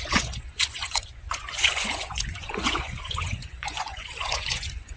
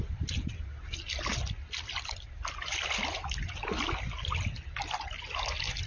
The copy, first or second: first